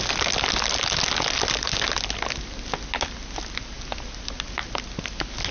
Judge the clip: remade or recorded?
recorded